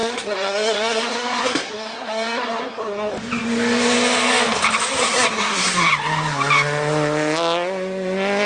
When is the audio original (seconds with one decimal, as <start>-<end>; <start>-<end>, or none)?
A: 3.1-5.0; 5.9-8.5